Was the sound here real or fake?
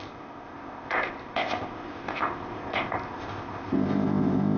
fake